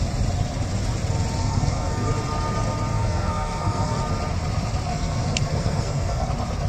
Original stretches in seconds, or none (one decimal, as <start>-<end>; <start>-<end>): 0.0-1.4; 2.1-2.9; 4.0-4.9; 6.3-6.7